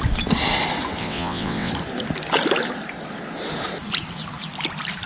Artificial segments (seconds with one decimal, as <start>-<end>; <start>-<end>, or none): 1.0-1.7